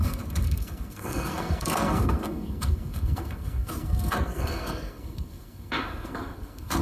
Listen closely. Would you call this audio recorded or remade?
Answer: remade